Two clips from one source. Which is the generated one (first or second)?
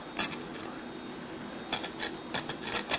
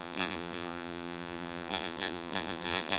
second